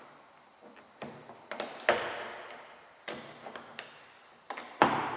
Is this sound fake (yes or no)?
no